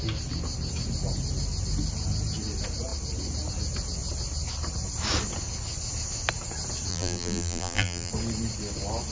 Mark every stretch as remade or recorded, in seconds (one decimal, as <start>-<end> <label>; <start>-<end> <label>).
0.0-6.9 recorded; 6.9-8.1 remade; 8.1-9.1 recorded